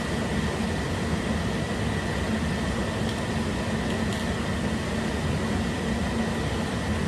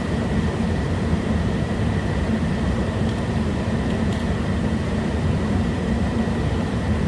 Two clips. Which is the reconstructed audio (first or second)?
second